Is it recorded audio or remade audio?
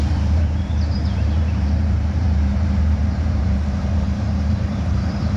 remade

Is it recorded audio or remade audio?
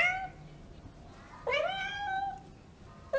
recorded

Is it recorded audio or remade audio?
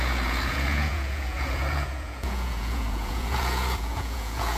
remade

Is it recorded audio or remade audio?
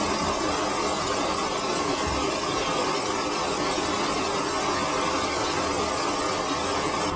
recorded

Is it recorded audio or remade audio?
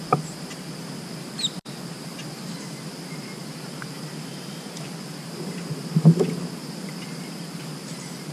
remade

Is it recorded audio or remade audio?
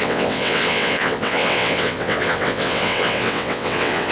remade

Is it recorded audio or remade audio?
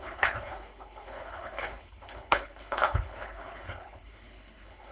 remade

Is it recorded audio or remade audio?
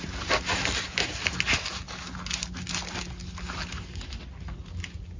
recorded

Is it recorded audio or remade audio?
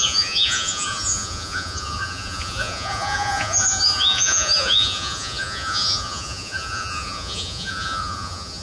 remade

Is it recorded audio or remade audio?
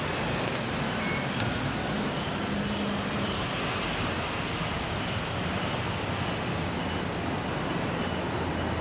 recorded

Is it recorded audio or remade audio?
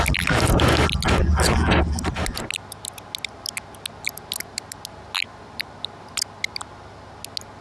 recorded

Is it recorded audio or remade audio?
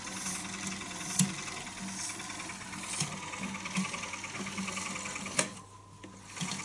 recorded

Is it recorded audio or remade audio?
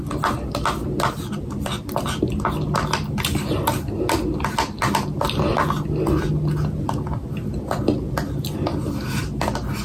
recorded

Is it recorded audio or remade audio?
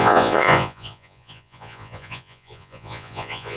remade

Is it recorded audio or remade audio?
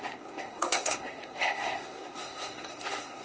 remade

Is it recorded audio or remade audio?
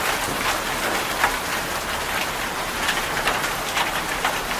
recorded